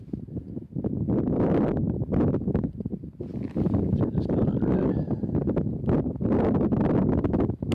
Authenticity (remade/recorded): recorded